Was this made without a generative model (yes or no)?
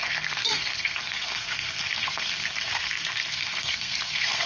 no